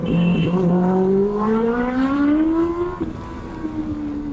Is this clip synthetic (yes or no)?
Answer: yes